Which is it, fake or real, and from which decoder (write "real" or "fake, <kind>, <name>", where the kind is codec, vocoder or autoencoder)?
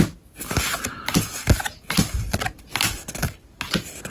real